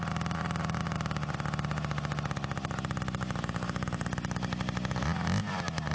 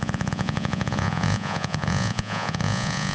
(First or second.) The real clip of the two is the first